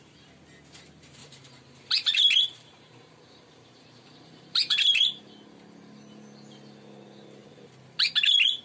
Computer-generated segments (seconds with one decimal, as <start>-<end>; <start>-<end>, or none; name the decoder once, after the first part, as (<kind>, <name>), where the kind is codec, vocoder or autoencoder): 1.2-5.2 (vocoder, BigVGAN v2)